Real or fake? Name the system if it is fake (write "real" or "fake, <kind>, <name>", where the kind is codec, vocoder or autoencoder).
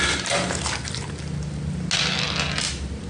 real